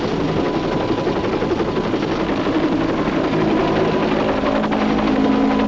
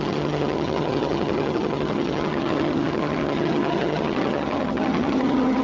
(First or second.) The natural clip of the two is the first